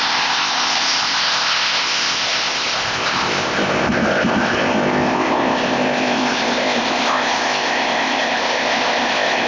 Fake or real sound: fake